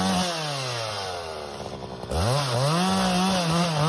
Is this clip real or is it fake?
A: real